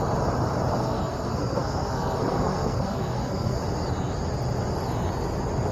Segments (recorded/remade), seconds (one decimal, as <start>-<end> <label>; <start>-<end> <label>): 0.0-0.7 recorded; 0.7-3.6 remade; 3.6-5.7 recorded